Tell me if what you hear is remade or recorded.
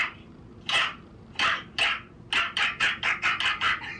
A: recorded